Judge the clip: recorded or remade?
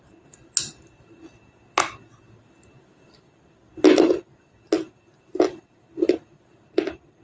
recorded